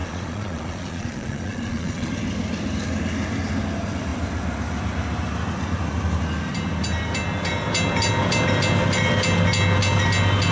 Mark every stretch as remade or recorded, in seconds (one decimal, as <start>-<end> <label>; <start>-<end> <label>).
0.0-2.1 remade; 2.1-10.5 recorded